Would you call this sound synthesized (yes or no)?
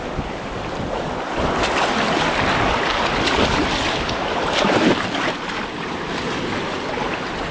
no